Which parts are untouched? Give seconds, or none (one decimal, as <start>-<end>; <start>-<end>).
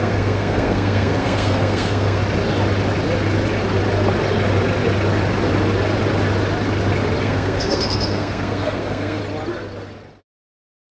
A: 2.2-7.2; 9.2-10.2